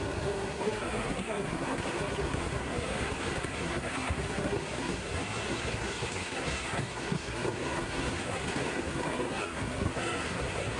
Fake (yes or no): yes